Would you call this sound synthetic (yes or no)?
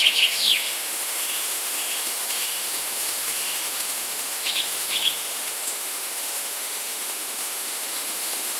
yes